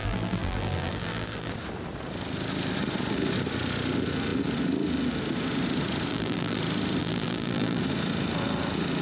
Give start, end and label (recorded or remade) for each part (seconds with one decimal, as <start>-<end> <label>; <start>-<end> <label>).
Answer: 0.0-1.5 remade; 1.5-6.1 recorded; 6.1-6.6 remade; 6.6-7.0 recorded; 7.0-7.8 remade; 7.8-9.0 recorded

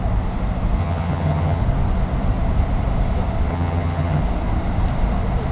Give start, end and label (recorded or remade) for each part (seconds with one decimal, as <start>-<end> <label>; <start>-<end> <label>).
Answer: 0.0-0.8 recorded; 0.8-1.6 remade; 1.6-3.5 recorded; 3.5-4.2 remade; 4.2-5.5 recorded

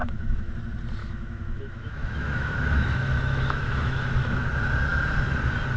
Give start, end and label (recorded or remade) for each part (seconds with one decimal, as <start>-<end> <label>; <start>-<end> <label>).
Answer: 0.0-0.5 remade; 0.5-1.0 recorded; 1.0-4.5 remade; 4.5-5.8 recorded